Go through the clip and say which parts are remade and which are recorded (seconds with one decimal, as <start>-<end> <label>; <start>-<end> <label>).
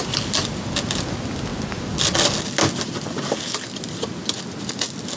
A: 0.0-5.2 recorded